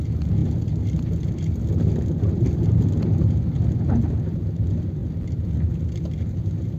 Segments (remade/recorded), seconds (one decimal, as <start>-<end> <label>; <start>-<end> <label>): 0.0-6.8 recorded